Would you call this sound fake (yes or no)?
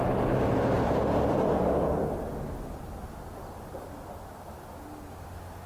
no